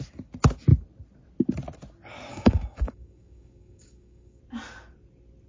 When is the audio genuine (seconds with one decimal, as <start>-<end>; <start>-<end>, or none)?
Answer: 0.0-2.3; 4.4-5.5